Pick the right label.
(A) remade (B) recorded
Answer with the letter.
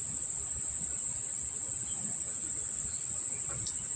B